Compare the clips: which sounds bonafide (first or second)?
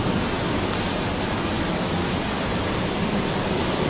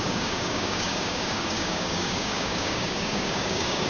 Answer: first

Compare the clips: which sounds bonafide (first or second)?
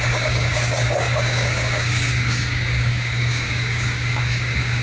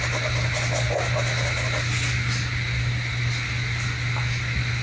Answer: second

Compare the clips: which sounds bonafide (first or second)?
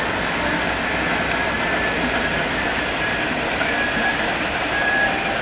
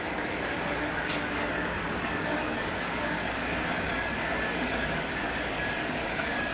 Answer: first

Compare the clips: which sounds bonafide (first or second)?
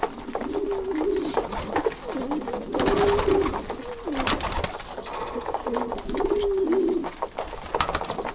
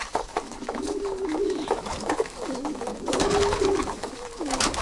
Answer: first